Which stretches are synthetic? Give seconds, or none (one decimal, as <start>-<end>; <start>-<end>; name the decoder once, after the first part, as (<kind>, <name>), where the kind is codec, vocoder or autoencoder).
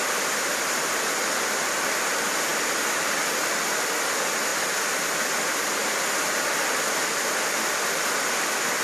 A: none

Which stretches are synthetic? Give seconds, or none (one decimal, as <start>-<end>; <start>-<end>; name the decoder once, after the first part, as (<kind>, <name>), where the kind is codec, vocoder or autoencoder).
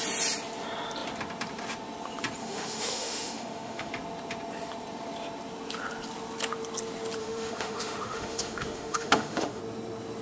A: 2.4-3.9 (autoencoder, DAC-VAE); 7.2-9.6